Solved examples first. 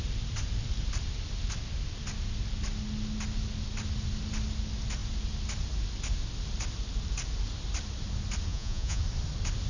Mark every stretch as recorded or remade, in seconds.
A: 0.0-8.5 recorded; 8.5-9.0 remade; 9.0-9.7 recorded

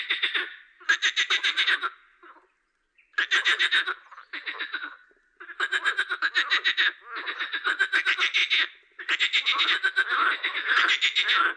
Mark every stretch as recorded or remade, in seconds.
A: 0.0-11.6 recorded